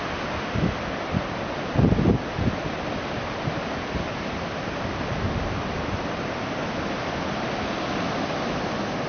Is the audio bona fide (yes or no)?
yes